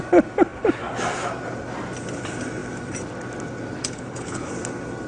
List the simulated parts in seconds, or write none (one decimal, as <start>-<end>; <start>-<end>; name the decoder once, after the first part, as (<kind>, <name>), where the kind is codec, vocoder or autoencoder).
3.8-4.5 (codec, HILCodec)